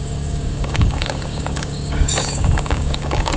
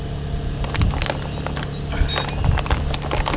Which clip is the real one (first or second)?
second